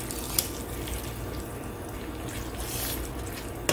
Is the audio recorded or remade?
recorded